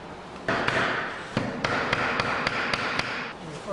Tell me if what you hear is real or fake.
real